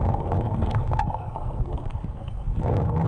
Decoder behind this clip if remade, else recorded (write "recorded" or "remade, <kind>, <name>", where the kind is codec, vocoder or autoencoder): remade, codec, SNAC